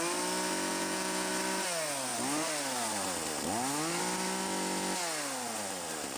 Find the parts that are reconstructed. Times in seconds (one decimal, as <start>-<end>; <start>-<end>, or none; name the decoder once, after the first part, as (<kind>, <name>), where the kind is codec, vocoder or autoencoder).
0.7-1.3 (vocoder, Vocos)